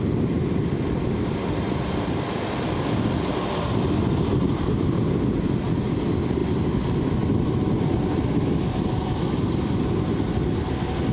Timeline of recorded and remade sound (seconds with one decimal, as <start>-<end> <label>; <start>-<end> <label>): 0.0-11.1 recorded

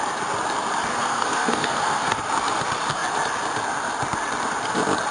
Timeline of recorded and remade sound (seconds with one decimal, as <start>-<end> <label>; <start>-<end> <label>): 0.0-0.9 recorded; 0.9-2.2 remade; 2.2-5.1 recorded

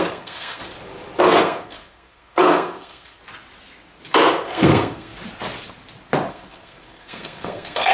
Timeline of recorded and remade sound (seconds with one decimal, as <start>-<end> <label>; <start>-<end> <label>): 0.0-0.6 remade; 0.6-1.2 recorded; 1.2-3.2 remade; 3.2-4.5 recorded; 4.5-5.1 remade; 5.1-6.3 recorded; 6.3-7.9 remade

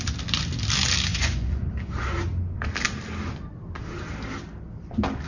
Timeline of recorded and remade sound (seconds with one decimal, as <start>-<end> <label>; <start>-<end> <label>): 0.0-1.1 recorded; 1.1-1.6 remade; 1.6-5.3 recorded

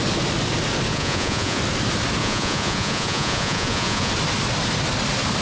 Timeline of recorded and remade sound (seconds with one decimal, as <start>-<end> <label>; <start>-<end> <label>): 0.0-0.9 recorded; 0.9-1.6 remade; 1.6-2.2 recorded; 2.2-4.1 remade; 4.1-5.4 recorded

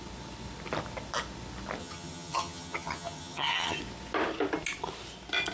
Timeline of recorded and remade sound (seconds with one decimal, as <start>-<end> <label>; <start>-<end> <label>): 0.0-1.8 recorded; 1.8-3.8 remade; 3.8-5.5 recorded

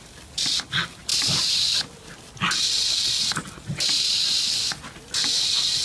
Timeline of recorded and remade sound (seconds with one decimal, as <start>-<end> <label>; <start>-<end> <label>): 0.0-5.8 recorded

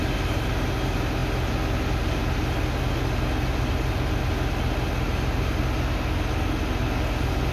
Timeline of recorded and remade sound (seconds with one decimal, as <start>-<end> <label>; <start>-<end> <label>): 0.0-7.5 recorded